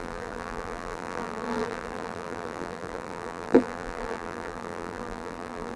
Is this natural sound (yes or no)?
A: no